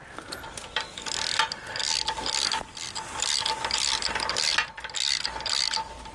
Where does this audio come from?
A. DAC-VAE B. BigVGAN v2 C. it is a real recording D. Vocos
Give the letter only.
C